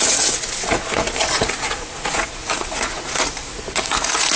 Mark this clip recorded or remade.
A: remade